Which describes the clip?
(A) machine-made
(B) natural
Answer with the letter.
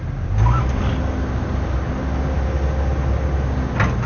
B